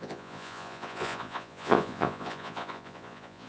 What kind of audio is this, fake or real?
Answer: fake